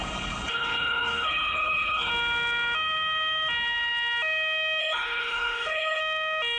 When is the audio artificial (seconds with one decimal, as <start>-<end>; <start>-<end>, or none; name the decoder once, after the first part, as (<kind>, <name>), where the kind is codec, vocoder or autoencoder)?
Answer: 0.0-2.1 (codec, HILCodec); 4.8-6.0

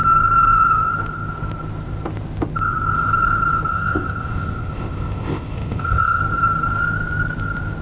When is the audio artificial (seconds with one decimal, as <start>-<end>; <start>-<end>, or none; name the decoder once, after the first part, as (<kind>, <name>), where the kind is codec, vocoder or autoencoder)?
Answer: 3.7-6.2 (codec, ZipCodec)

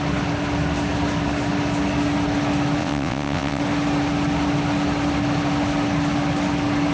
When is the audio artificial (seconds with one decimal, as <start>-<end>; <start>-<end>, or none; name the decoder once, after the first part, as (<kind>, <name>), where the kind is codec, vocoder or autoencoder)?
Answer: 2.8-3.6 (vocoder, WaveNeXt)

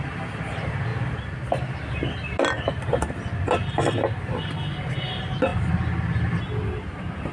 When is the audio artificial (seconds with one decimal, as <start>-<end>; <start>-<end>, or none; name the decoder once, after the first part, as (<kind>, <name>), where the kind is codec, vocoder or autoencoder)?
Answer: none

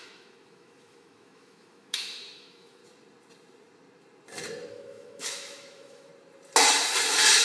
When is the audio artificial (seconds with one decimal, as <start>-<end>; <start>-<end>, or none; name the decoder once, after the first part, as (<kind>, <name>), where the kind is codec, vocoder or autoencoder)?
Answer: 0.0-2.8 (autoencoder, DAC-VAE); 4.7-6.1